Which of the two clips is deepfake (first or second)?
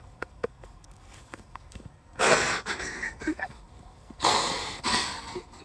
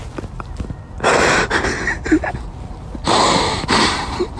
first